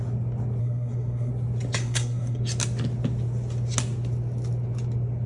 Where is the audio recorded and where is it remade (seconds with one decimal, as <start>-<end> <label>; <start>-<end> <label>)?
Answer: 0.0-0.6 recorded; 0.6-1.3 remade; 1.3-1.8 recorded; 1.8-2.4 remade; 2.4-5.3 recorded